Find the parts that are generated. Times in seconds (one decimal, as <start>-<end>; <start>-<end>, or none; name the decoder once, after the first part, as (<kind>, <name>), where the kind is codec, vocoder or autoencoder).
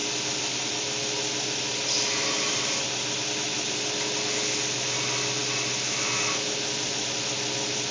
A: none